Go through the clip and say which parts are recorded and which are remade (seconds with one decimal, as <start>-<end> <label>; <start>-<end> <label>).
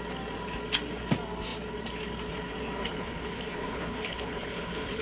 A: 0.0-2.8 recorded; 2.8-5.0 remade